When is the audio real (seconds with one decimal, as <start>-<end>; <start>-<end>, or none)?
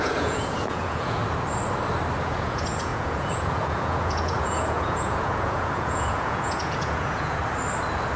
1.2-2.2; 7.4-8.2